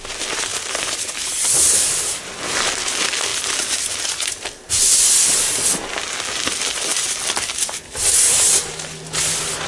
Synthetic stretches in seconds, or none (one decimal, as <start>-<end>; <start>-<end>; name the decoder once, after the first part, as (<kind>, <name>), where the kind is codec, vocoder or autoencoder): 0.5-2.3 (vocoder, BigVGAN v2); 3.3-4.7